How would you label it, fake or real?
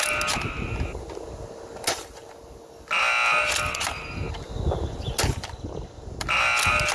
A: real